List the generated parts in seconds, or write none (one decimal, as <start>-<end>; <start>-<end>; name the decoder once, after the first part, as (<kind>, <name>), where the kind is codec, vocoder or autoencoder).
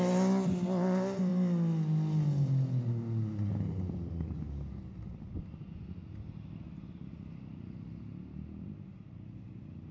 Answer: none